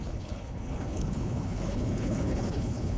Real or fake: fake